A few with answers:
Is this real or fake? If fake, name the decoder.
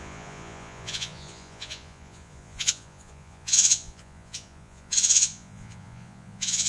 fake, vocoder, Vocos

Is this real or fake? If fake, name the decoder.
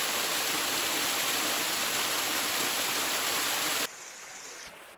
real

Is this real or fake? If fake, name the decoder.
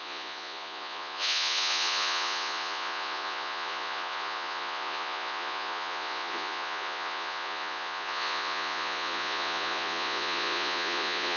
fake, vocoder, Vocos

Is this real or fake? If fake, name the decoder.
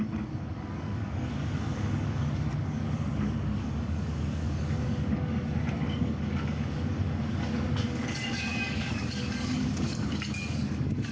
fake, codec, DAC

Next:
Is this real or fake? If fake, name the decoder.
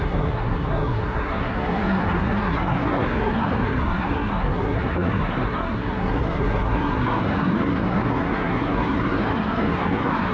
fake, codec, SNAC